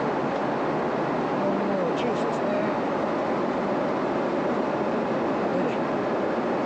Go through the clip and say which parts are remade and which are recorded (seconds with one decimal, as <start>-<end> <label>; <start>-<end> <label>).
0.0-6.7 recorded